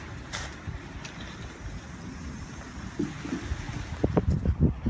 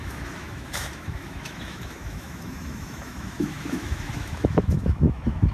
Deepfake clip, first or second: second